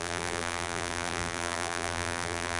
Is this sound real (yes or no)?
no